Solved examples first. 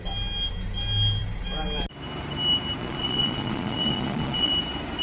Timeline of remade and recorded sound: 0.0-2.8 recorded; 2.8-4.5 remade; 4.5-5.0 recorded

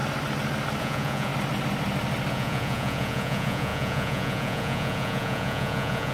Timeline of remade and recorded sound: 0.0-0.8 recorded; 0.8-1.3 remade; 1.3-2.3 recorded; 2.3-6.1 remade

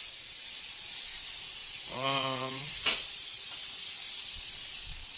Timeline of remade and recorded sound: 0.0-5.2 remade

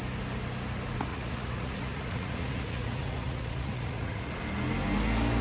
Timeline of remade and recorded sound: 0.0-1.1 recorded; 1.1-4.3 remade; 4.3-5.4 recorded